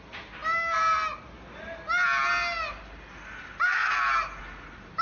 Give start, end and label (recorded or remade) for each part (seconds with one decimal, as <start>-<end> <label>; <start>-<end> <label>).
0.0-5.0 recorded